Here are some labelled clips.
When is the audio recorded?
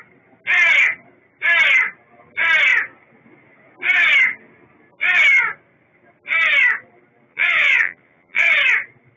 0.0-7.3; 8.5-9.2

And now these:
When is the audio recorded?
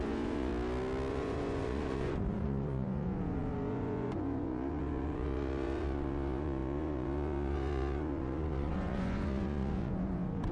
0.5-1.1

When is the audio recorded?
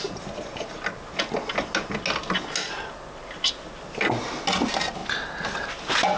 0.0-6.2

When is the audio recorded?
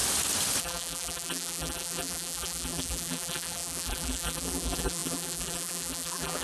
0.0-0.6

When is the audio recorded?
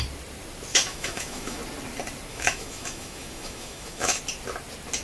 0.0-0.7; 1.6-2.3; 4.2-5.0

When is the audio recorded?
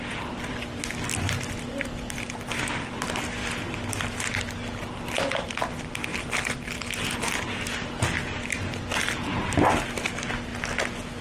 0.0-11.2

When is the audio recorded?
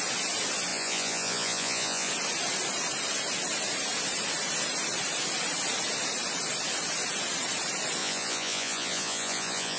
0.0-0.7; 2.1-8.0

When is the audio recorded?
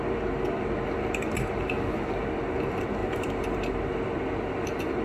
0.0-3.0; 4.1-5.0